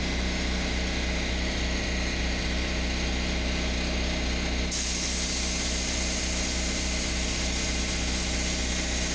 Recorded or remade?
recorded